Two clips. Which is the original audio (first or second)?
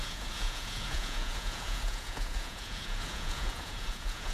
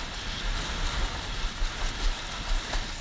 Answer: second